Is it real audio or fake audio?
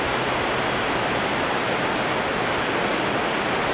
real